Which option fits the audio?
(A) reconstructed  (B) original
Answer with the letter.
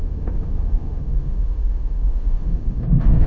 A